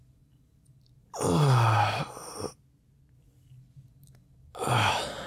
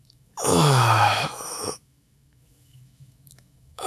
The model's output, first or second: second